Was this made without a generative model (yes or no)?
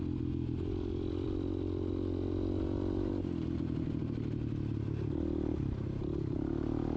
yes